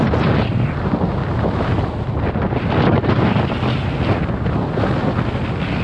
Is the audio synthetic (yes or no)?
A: no